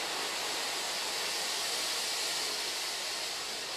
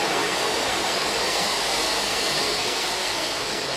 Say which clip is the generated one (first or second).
second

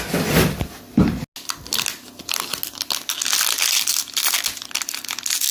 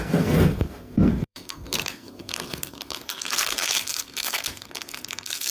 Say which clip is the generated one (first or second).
second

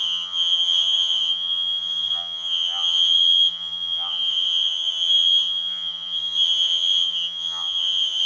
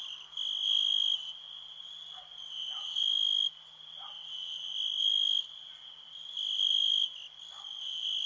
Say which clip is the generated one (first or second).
first